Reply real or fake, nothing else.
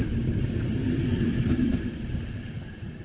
fake